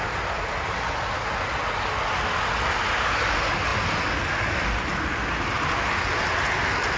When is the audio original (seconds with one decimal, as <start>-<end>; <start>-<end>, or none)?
0.0-7.0